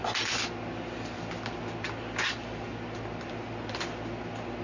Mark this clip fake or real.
real